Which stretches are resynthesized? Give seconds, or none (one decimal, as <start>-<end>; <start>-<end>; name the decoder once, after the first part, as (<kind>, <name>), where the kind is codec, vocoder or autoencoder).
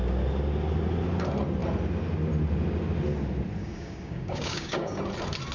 3.6-5.0 (codec, DAC)